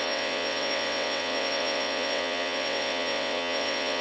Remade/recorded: remade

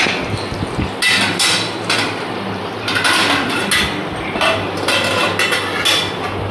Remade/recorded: recorded